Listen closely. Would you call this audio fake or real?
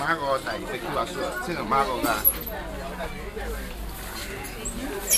real